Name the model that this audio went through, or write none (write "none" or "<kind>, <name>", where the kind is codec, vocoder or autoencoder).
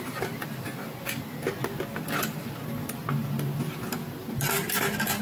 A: none